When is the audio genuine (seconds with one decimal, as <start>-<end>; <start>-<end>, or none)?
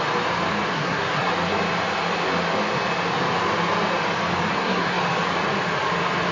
0.0-0.7; 1.3-4.5; 5.0-6.3